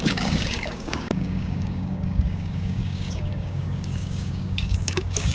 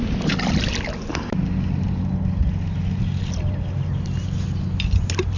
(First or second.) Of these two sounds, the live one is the second